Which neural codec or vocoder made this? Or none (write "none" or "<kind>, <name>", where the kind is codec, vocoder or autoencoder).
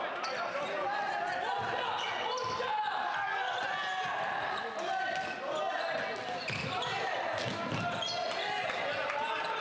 none